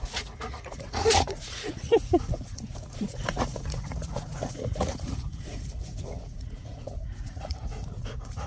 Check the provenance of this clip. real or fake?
fake